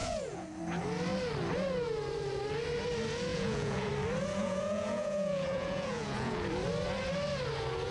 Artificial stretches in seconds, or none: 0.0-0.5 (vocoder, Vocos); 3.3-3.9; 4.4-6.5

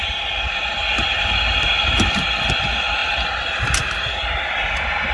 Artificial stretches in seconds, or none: none